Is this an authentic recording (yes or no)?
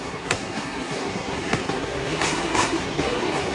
no